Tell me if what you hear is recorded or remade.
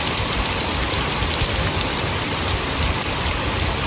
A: remade